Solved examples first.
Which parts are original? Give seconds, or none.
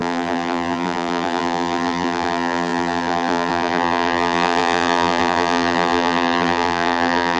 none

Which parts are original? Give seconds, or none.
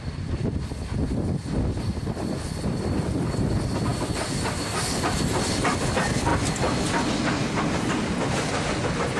1.0-1.8; 3.9-4.8; 6.3-9.2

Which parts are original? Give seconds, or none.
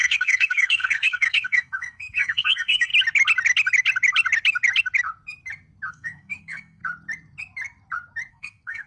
2.9-5.9; 6.8-8.3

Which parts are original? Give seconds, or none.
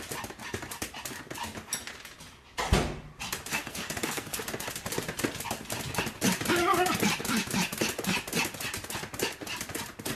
0.0-3.5; 4.4-10.2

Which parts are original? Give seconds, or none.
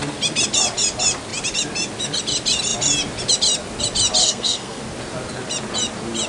0.0-4.2; 4.8-6.3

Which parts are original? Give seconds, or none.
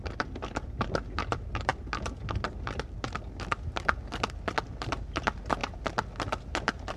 0.0-7.0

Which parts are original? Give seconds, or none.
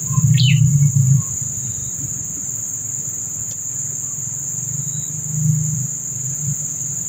1.8-6.1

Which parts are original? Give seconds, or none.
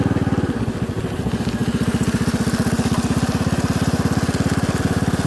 0.0-5.3